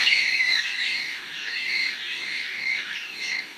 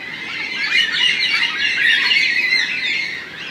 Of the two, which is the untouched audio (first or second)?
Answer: second